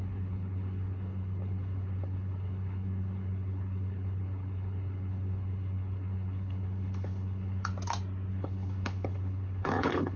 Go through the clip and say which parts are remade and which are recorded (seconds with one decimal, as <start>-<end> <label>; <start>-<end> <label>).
0.0-7.7 remade; 7.7-8.3 recorded; 8.3-10.2 remade